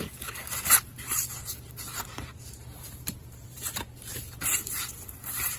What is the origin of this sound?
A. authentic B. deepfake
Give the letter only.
B